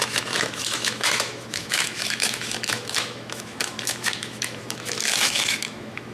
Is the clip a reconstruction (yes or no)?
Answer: yes